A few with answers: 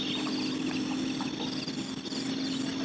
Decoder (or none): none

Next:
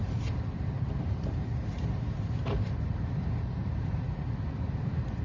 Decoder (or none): vocoder, BigVGAN v2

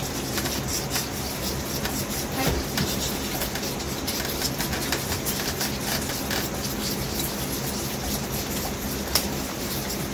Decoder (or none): none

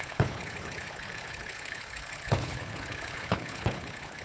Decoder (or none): codec, HILCodec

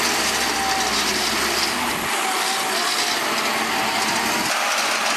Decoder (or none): none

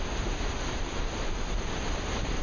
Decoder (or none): vocoder, BigVGAN v2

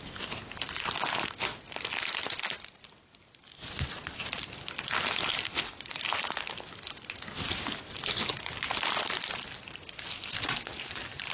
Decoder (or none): none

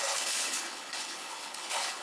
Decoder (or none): codec, HILCodec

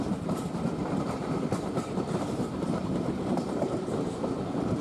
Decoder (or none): vocoder, BigVGAN v2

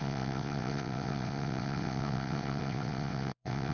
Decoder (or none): vocoder, WaveNeXt